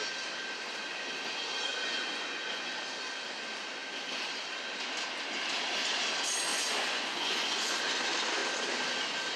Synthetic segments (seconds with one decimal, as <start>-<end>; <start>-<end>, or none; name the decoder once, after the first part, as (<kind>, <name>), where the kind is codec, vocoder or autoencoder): 1.7-2.7 (vocoder, Vocos); 6.5-7.8